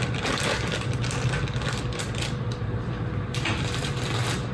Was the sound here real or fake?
real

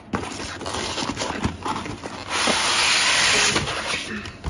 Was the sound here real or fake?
real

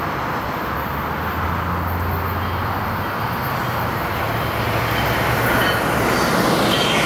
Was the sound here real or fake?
real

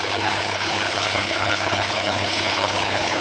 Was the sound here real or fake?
fake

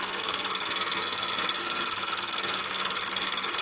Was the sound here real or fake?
fake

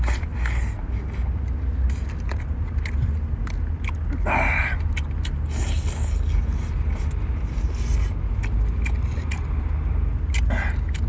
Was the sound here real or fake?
real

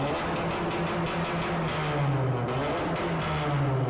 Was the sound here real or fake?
real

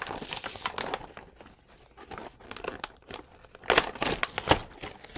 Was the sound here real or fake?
real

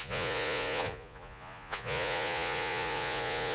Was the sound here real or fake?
fake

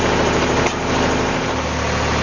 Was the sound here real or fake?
real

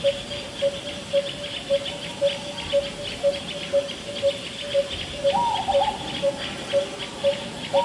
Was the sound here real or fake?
real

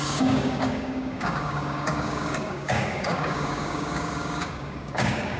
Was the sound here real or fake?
fake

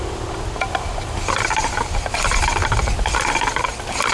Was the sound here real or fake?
real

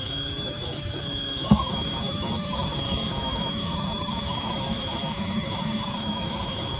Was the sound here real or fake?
fake